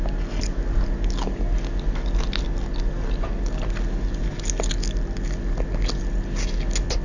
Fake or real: real